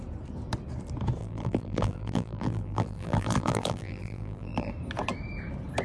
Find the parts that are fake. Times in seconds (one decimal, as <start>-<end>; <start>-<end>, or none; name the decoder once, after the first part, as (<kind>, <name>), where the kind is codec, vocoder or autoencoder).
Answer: 1.2-4.7 (vocoder, BigVGAN v2)